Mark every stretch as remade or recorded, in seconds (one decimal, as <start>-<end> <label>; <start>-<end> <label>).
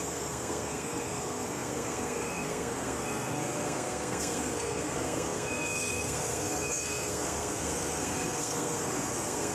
0.0-9.5 remade